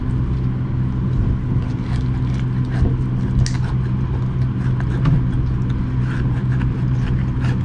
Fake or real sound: real